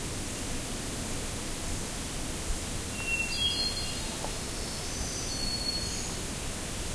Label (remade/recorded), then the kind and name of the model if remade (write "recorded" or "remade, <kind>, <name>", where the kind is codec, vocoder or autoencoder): recorded